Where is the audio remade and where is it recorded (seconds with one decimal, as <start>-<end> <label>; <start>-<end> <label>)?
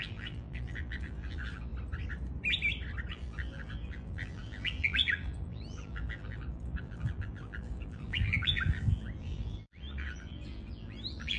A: 0.0-1.7 remade; 1.7-3.1 recorded; 3.1-11.4 remade